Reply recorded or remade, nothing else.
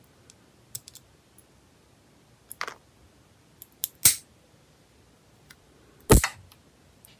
recorded